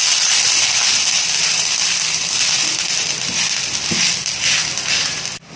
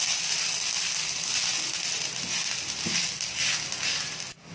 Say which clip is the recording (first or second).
second